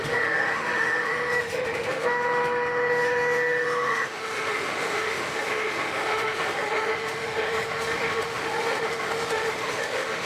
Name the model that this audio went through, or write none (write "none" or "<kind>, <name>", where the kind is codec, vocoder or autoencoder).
autoencoder, DAC-VAE